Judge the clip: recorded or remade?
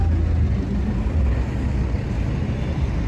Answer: recorded